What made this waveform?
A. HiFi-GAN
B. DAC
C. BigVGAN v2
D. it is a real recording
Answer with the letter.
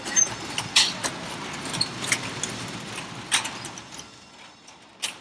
D